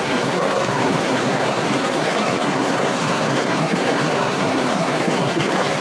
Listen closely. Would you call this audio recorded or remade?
remade